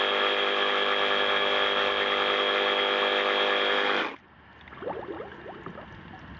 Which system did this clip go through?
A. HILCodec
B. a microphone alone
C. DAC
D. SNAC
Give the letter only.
B